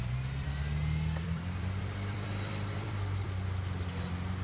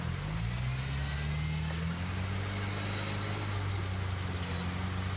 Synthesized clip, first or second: first